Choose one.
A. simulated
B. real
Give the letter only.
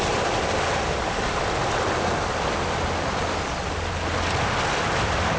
B